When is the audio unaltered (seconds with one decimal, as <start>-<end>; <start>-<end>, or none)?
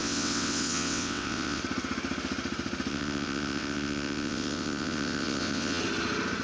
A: 1.6-2.9; 5.8-6.4